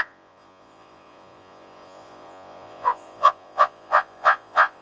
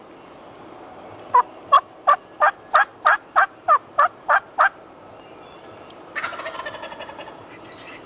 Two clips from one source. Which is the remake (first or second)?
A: first